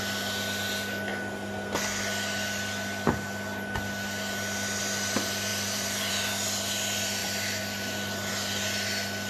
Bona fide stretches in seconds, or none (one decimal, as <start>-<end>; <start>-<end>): 0.0-5.5; 6.1-7.2; 8.3-9.3